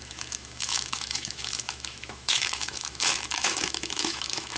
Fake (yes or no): yes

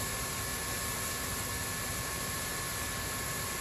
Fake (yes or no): no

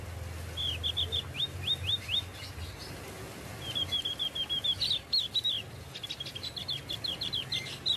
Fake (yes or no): no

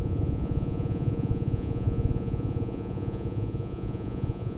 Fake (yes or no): yes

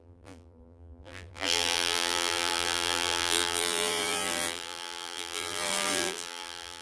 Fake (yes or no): yes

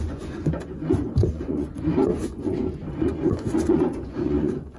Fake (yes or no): yes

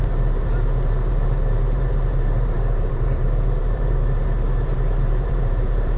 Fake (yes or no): yes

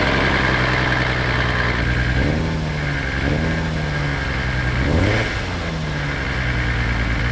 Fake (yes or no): no